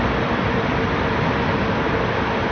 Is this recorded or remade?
recorded